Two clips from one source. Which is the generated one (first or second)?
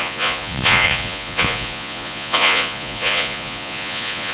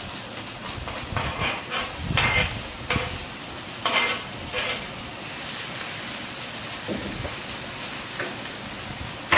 first